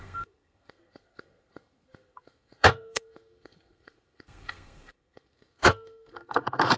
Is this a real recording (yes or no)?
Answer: no